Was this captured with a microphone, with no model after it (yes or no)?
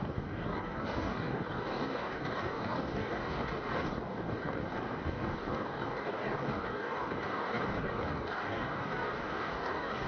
no